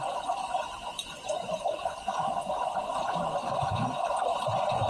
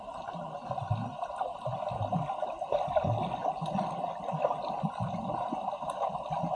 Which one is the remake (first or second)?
first